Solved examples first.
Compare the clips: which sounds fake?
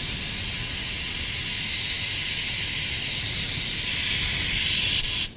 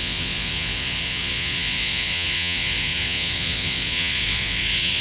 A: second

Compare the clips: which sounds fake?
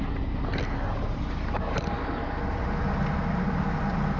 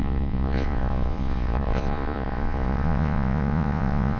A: second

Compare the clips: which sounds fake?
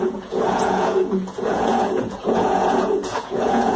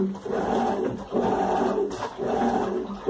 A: first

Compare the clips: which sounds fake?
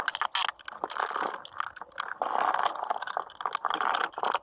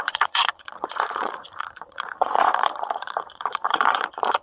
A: second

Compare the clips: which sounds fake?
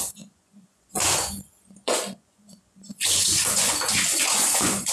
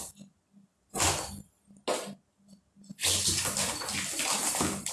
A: first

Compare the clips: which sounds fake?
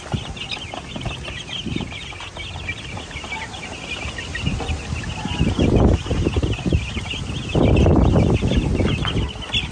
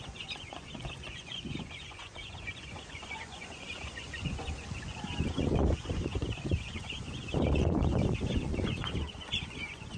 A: second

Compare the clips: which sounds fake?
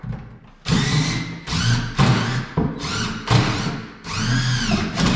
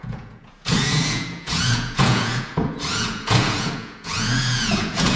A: second